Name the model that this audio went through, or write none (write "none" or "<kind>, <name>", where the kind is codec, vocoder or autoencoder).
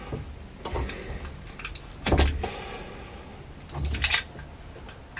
none